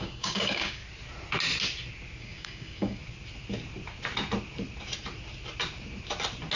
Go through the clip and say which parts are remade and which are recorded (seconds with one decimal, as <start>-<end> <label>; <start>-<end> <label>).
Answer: 0.0-0.8 remade; 0.8-2.2 recorded; 2.2-3.0 remade; 3.0-6.6 recorded